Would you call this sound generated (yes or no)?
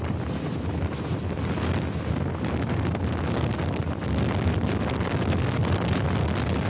no